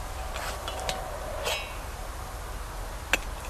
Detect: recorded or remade recorded